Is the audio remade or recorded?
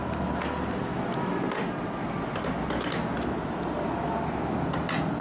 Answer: recorded